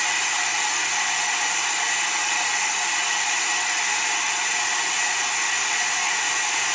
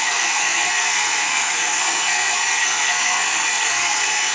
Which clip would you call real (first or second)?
first